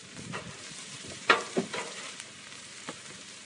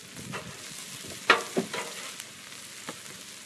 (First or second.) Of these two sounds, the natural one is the second